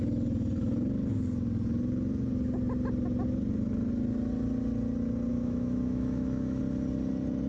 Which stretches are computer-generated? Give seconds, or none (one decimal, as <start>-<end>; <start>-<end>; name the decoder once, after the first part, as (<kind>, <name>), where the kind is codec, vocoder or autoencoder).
5.3-6.6 (autoencoder, DAC-VAE)